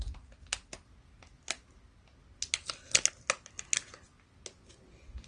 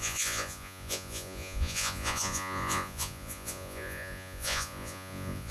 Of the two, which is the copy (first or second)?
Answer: second